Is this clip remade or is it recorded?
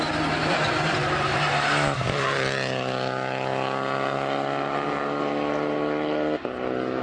recorded